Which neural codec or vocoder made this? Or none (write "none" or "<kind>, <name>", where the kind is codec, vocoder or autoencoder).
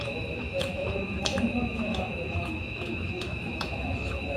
autoencoder, DAC-VAE